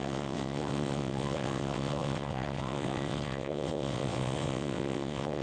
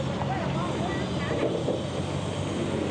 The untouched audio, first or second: second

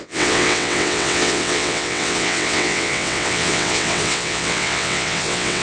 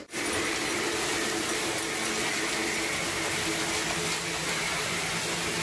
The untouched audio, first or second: second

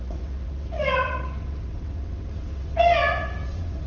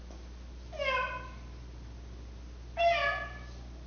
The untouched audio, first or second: second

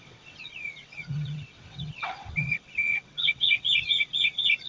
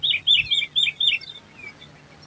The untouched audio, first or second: second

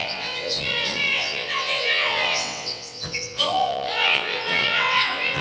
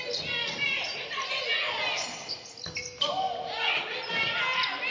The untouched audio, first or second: second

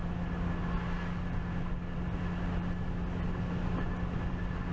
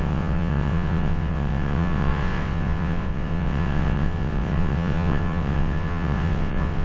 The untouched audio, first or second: first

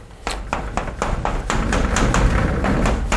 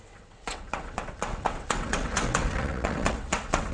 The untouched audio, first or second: first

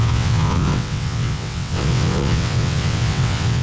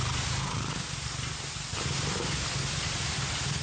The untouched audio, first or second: second